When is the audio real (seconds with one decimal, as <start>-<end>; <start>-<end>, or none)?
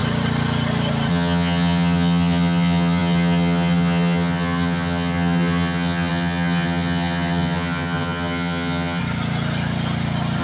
0.0-1.1; 9.0-10.4